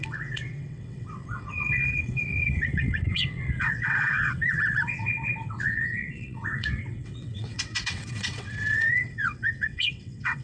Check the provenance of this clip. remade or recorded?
remade